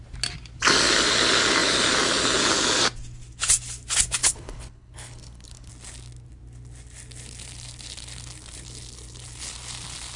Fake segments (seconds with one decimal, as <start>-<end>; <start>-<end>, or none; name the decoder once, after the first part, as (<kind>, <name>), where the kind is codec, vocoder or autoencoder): 4.2-5.7 (codec, HILCodec)